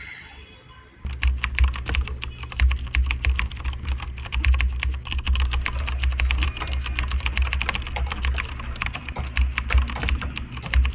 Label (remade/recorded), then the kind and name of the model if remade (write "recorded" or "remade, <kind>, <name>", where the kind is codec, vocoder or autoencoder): recorded